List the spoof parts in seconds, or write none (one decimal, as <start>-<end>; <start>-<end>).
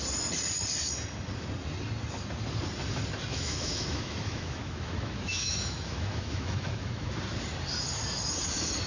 3.3-7.1